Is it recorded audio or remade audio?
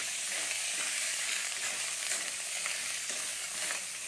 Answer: remade